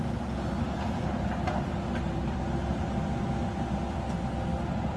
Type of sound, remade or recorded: recorded